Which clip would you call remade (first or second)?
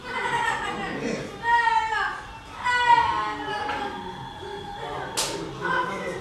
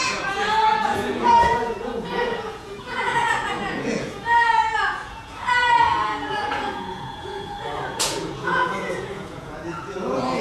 second